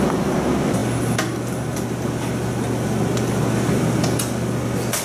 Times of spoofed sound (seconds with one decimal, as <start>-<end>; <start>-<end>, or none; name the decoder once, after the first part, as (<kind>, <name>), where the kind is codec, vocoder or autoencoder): none